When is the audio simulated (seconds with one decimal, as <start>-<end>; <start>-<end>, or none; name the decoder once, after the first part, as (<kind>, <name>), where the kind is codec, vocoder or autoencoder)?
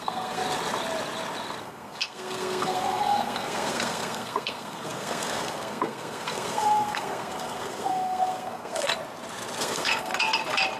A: 0.0-0.4 (codec, SNAC); 1.6-8.9; 9.6-10.1